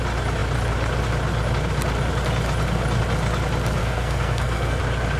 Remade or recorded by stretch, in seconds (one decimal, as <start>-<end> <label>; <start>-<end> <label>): 0.0-3.8 recorded; 3.8-4.8 remade; 4.8-5.2 recorded